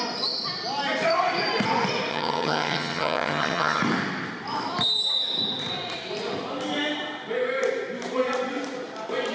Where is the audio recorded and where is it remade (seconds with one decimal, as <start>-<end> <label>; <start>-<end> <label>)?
0.0-2.1 recorded; 2.1-3.8 remade; 3.8-9.3 recorded